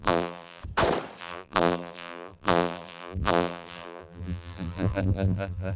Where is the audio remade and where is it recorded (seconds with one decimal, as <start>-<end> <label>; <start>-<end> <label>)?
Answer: 0.0-0.6 remade; 0.6-1.2 recorded; 1.2-5.8 remade